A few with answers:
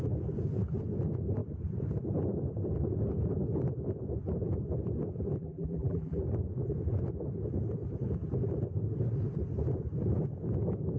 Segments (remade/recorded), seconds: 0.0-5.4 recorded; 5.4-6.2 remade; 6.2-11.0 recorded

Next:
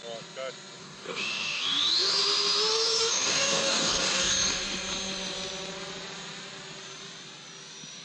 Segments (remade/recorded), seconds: 0.0-0.8 recorded; 0.8-2.2 remade; 2.2-2.7 recorded; 2.7-4.3 remade; 4.3-8.0 recorded

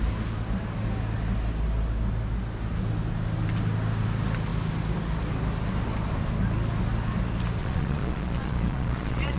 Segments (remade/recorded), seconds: 0.0-7.6 recorded; 7.6-9.4 remade

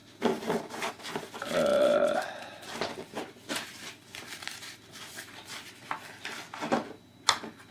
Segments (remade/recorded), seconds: 0.0-0.9 remade; 0.9-1.7 recorded; 1.7-5.7 remade; 5.7-7.7 recorded

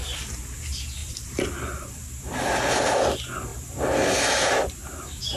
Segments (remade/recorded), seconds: 0.0-0.6 remade; 0.6-1.0 recorded; 1.0-2.0 remade; 2.0-3.5 recorded; 3.5-4.7 remade; 4.7-5.4 recorded

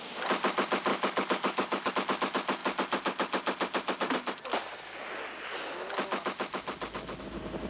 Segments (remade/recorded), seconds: 0.0-0.9 recorded; 0.9-1.9 remade; 1.9-7.7 recorded

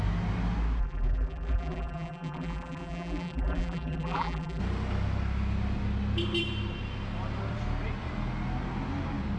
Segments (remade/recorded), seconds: 0.0-0.8 recorded; 0.8-4.6 remade; 4.6-9.4 recorded